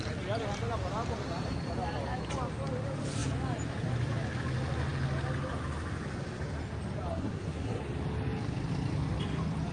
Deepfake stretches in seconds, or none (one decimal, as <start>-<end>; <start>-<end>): 7.1-7.8